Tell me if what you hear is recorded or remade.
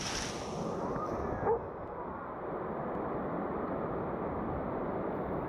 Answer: recorded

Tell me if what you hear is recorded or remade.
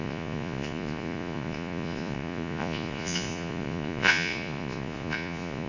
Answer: remade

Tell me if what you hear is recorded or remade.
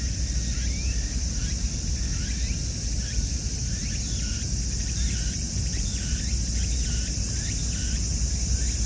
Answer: recorded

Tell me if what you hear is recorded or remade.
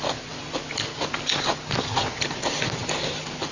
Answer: recorded